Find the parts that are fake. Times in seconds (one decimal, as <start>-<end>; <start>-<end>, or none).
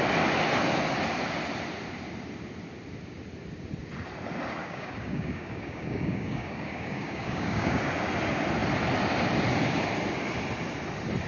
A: 4.6-7.8